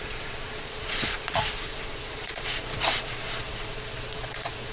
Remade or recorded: remade